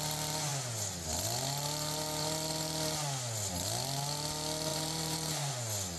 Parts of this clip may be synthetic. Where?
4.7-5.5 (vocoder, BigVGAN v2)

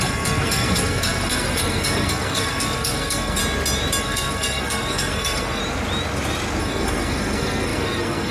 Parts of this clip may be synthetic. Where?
0.0-3.4 (codec, SNAC); 4.0-5.6; 6.6-8.3

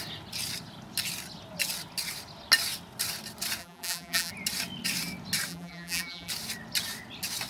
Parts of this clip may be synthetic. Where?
3.6-4.3 (vocoder, BigVGAN v2); 5.5-6.3

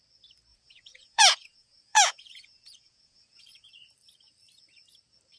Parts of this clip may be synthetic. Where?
0.5-3.7 (vocoder, Vocos)

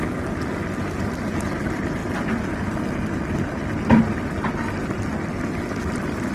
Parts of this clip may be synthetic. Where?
2.0-2.6 (vocoder, BigVGAN v2)

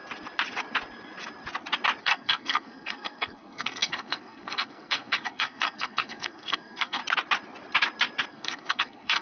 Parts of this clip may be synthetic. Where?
2.0-7.0 (codec, SNAC); 8.3-9.2

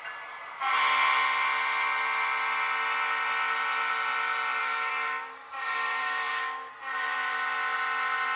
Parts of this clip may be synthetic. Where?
4.6-6.7 (codec, DAC)